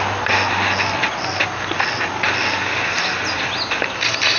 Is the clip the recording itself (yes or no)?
yes